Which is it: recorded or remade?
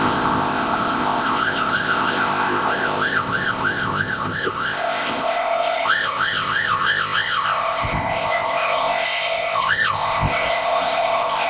remade